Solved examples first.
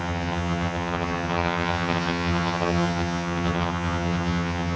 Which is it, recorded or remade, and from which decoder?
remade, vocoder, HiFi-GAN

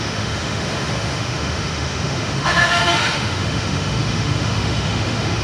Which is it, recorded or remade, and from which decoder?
remade, autoencoder, DAC-VAE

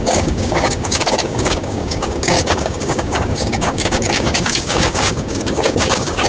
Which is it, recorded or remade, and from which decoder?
remade, codec, DAC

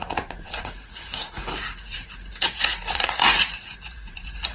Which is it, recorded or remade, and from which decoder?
remade, vocoder, Vocos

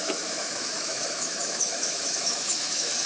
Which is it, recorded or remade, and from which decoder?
remade, autoencoder, DAC-VAE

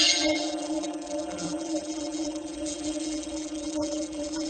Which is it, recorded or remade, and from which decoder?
remade, vocoder, BigVGAN v2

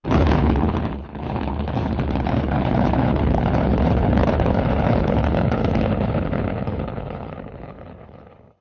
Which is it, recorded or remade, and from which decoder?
remade, codec, HILCodec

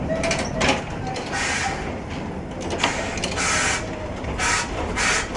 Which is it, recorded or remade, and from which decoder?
recorded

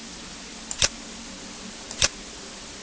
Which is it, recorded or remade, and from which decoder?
recorded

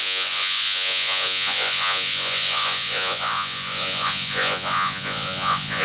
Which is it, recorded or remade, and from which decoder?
remade, vocoder, Vocos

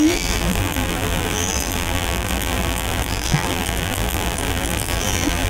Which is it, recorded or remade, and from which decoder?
remade, vocoder, BigVGAN v2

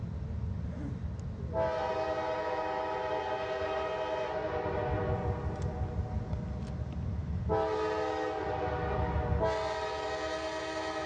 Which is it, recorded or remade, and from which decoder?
recorded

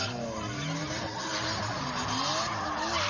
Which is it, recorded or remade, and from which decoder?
recorded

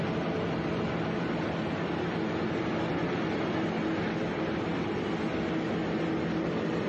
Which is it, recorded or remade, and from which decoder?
recorded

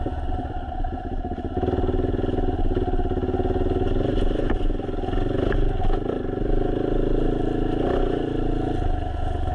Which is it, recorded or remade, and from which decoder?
recorded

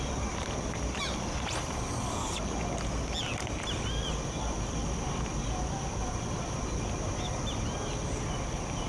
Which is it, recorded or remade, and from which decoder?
recorded